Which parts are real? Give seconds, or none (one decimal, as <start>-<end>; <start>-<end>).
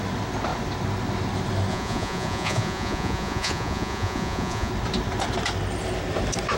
0.0-1.7; 4.7-6.6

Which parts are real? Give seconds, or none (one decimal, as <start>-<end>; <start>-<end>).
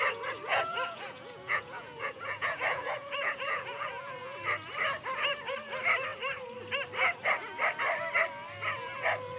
0.0-0.5; 4.4-9.4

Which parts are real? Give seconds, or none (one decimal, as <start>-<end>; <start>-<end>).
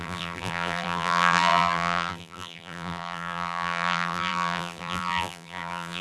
none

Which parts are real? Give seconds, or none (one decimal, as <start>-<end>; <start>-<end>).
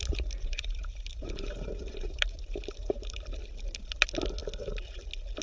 3.2-5.4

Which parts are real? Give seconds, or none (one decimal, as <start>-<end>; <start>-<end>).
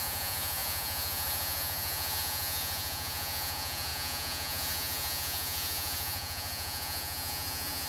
none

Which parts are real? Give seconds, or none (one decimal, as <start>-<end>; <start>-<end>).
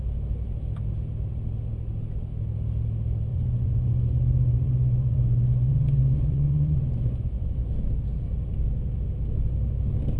0.0-3.3; 4.1-4.5; 7.7-10.2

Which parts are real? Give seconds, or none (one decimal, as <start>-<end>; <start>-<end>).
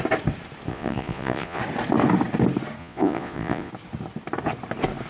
0.0-0.7; 1.6-2.8; 3.7-5.1